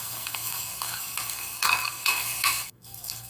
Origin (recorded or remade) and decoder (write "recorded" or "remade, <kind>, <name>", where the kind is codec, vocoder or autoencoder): remade, codec, SNAC